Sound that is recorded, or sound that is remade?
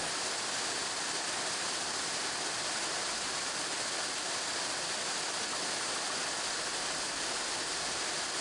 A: recorded